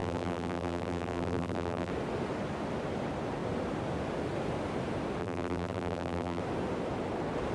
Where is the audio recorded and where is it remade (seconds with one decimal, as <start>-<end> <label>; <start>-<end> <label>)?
0.0-1.9 remade; 1.9-5.2 recorded; 5.2-6.4 remade; 6.4-7.5 recorded